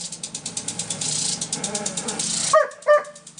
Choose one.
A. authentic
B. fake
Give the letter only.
A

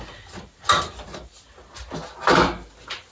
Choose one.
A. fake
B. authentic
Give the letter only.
B